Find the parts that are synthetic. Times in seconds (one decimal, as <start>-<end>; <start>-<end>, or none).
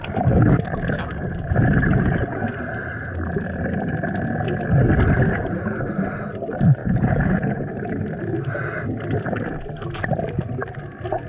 6.8-7.7